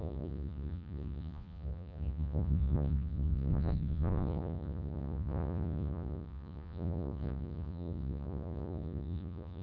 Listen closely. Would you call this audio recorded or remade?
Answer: remade